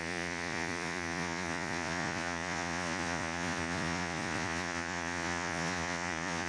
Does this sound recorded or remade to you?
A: remade